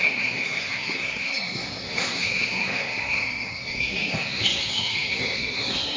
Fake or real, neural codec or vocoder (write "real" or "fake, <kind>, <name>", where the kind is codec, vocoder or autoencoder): fake, codec, SNAC